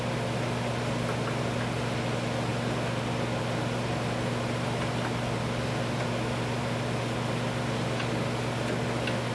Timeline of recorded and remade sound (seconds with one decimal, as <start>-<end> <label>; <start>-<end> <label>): 0.0-9.3 recorded